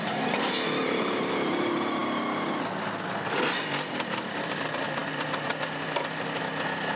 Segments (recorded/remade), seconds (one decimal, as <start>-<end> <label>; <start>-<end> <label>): 0.0-7.0 recorded